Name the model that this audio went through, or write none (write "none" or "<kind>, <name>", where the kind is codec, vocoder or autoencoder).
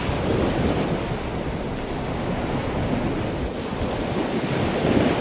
none